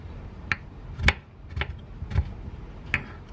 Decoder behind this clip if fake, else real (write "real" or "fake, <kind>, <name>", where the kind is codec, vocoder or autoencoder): real